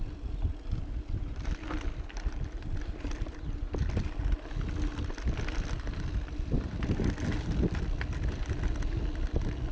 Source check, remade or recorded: recorded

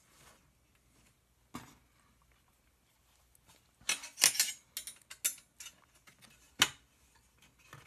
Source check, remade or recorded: recorded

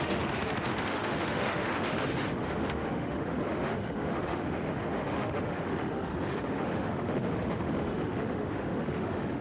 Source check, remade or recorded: remade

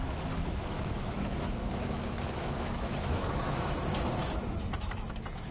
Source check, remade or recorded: remade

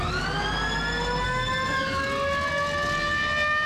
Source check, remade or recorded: recorded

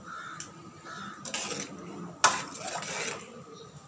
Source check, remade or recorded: recorded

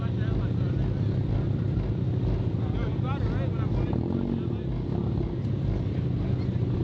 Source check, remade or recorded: recorded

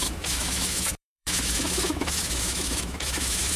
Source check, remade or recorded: remade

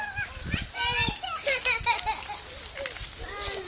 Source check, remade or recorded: recorded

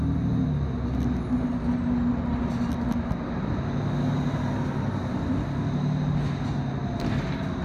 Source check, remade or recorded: recorded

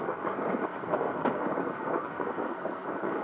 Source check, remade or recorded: remade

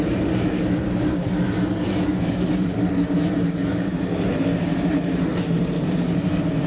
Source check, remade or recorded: remade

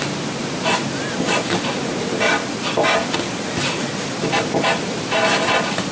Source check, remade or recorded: recorded